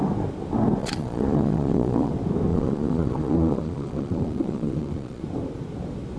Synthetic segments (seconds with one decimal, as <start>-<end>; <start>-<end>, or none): 0.8-2.1; 2.5-5.2